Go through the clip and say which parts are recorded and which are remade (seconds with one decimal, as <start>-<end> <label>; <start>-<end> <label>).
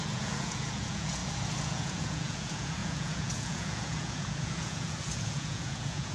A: 0.0-6.1 remade